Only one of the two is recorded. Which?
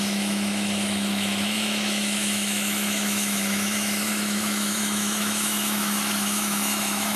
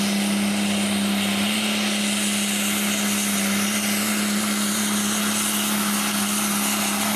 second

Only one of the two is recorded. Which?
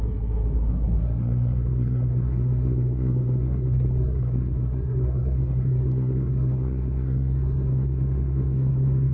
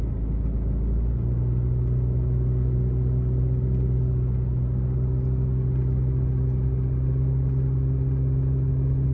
second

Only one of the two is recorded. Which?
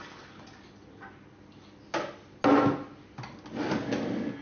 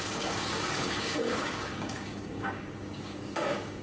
first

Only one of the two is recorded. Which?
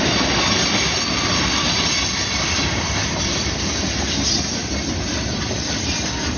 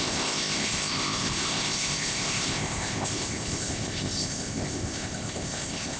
first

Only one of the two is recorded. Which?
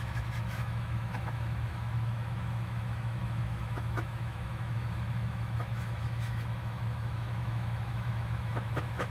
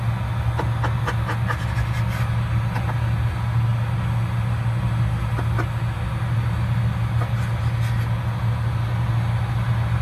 second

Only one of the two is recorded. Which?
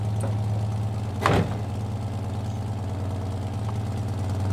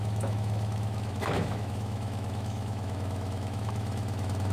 first